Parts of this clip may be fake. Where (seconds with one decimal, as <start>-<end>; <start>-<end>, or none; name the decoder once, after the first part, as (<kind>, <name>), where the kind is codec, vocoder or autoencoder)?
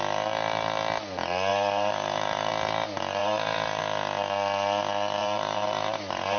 1.5-2.5 (vocoder, BigVGAN v2); 3.2-3.8; 5.2-6.4